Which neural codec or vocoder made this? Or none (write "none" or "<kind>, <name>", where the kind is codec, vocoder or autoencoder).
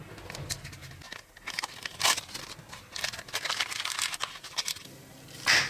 none